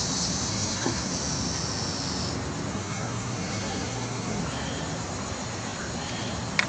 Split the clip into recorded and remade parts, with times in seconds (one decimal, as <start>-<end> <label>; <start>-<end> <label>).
0.0-0.5 recorded; 0.5-1.1 remade; 1.1-2.7 recorded; 2.7-4.4 remade; 4.4-6.7 recorded